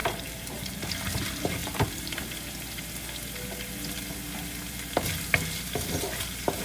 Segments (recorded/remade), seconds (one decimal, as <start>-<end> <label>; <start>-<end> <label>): 0.0-0.9 remade; 0.9-1.6 recorded; 1.6-2.2 remade; 2.2-6.6 recorded